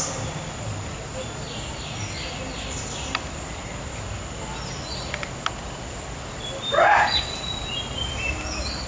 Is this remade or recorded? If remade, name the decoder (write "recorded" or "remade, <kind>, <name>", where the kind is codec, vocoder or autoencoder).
recorded